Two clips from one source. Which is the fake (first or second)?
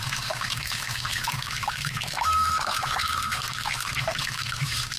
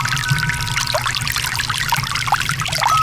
first